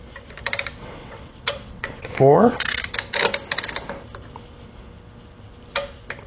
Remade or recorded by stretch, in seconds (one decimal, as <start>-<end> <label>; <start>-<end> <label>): 0.0-1.0 recorded; 1.0-2.8 remade; 2.8-6.3 recorded